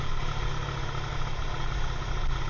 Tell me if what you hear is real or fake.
real